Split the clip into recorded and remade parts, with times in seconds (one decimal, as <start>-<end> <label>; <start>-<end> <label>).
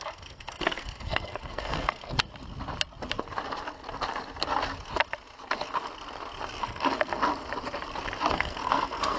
0.0-2.3 remade; 2.3-6.6 recorded; 6.6-7.2 remade; 7.2-8.3 recorded; 8.3-9.2 remade